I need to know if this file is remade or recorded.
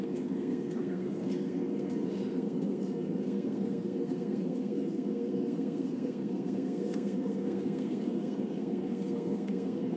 remade